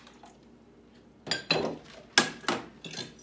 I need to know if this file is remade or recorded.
recorded